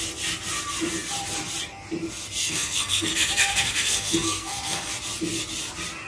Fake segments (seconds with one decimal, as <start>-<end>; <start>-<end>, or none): 2.4-4.9